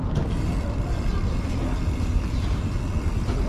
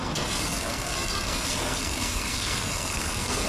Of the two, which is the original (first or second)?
first